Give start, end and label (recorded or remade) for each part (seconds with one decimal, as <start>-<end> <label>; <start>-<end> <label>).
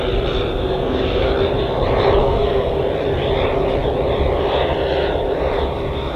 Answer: 0.0-0.5 recorded; 0.5-1.3 remade; 1.3-2.2 recorded; 2.2-2.8 remade; 2.8-6.2 recorded